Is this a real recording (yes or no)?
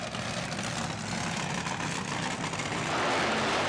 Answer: yes